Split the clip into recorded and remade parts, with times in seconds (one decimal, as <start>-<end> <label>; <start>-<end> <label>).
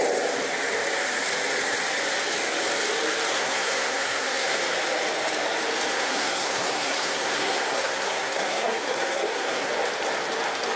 0.0-3.3 recorded; 3.3-4.6 remade; 4.6-5.9 recorded; 5.9-9.7 remade; 9.7-10.8 recorded